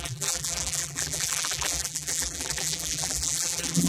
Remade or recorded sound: remade